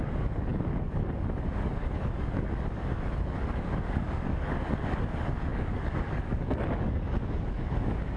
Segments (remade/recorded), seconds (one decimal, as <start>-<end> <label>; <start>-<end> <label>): 0.0-8.2 remade

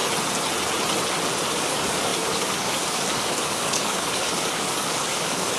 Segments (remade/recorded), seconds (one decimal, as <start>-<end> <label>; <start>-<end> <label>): 0.0-1.5 recorded; 1.5-5.6 remade

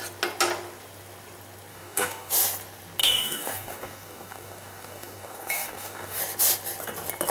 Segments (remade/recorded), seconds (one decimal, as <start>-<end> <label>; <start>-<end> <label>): 0.0-1.7 recorded; 1.7-2.3 remade; 2.3-3.0 recorded; 3.0-6.2 remade; 6.2-7.3 recorded

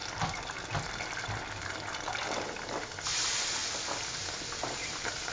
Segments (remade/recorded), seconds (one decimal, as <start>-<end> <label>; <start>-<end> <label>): 0.0-5.3 recorded

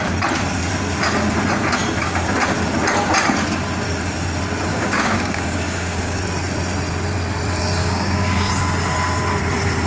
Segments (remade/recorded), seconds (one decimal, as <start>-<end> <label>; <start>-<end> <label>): 0.0-4.7 recorded; 4.7-6.2 remade; 6.2-7.8 recorded; 7.8-8.5 remade; 8.5-9.9 recorded